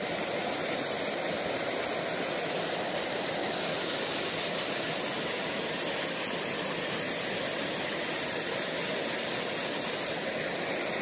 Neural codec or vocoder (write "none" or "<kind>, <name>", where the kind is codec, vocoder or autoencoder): none